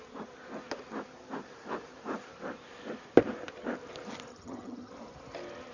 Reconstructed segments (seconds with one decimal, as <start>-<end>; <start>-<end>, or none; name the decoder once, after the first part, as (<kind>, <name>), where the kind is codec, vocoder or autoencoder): 4.3-4.9 (vocoder, HiFi-GAN)